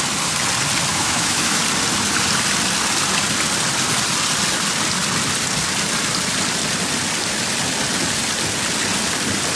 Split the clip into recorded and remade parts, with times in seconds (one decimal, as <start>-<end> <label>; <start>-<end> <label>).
0.0-0.9 recorded; 0.9-1.6 remade; 1.6-9.6 recorded